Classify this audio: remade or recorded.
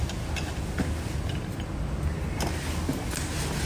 recorded